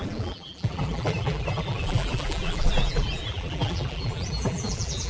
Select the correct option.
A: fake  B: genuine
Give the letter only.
A